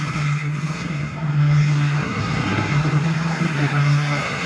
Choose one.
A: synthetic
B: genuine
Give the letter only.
A